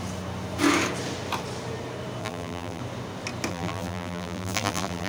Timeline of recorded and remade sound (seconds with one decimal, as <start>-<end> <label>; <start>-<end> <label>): 0.0-2.2 recorded; 2.2-2.8 remade; 2.8-3.5 recorded; 3.5-5.1 remade